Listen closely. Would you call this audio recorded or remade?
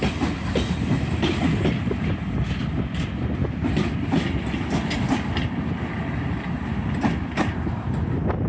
recorded